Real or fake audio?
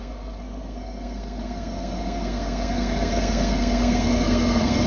fake